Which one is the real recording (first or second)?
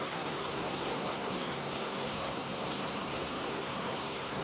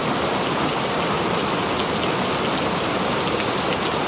second